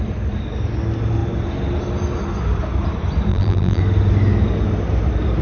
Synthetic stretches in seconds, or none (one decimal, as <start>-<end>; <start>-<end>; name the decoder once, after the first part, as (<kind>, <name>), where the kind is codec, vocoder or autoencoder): 3.3-3.8 (vocoder, BigVGAN v2)